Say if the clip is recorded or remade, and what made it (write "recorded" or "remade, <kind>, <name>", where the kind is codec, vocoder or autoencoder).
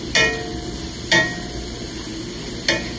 recorded